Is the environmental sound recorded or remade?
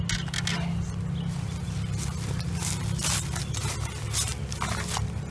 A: recorded